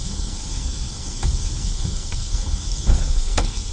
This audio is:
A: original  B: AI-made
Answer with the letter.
B